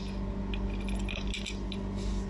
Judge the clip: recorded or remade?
recorded